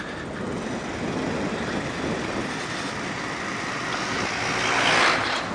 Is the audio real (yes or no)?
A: yes